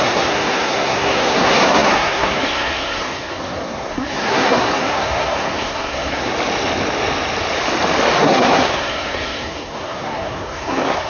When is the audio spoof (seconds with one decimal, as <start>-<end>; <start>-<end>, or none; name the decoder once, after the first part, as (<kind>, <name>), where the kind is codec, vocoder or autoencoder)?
0.0-6.3 (codec, SNAC); 8.2-11.1

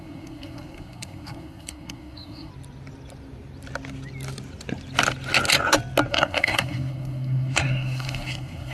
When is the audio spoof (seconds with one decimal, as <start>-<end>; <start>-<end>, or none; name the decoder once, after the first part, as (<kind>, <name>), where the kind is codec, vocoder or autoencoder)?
0.0-2.5 (codec, SNAC); 6.1-8.7

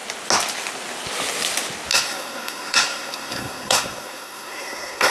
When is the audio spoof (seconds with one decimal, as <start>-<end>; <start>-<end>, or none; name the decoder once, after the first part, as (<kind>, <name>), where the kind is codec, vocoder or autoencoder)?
1.9-5.1 (codec, SNAC)